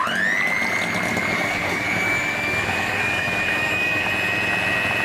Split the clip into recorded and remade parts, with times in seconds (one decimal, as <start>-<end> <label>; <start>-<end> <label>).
0.0-1.1 recorded; 1.1-4.1 remade; 4.1-5.0 recorded